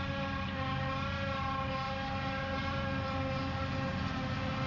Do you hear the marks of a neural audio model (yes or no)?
no